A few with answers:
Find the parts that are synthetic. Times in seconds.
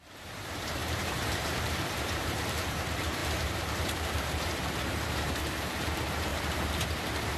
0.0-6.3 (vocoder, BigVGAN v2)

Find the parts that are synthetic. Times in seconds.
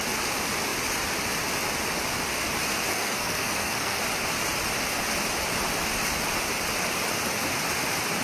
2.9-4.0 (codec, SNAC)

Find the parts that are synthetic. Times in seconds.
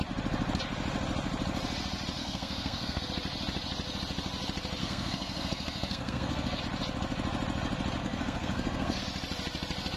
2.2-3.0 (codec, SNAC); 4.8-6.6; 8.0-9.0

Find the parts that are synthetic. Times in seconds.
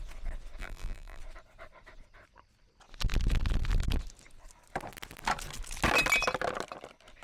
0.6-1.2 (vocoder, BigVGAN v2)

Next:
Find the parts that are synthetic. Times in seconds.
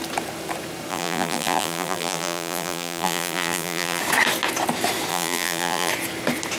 0.9-4.0 (vocoder, BigVGAN v2); 5.1-5.9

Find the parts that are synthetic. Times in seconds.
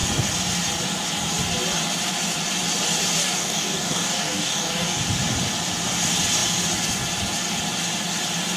3.2-5.0 (codec, DAC)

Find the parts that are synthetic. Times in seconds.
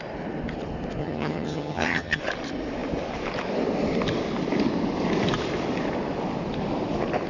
1.0-2.2 (vocoder, HiFi-GAN)